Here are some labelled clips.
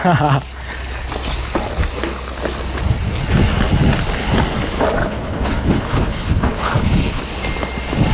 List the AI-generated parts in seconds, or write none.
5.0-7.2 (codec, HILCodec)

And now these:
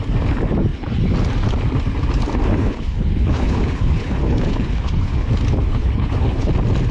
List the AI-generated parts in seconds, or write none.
2.5-5.3 (codec, HILCodec); 5.7-6.5

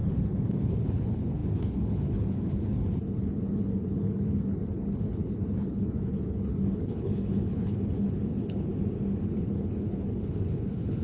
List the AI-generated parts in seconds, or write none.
0.0-8.7 (codec, HILCodec); 9.2-11.0

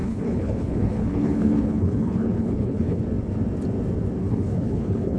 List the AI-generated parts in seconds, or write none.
0.0-3.0 (codec, HILCodec); 4.2-5.2

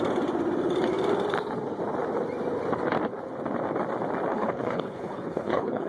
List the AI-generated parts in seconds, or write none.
4.3-5.9 (codec, HILCodec)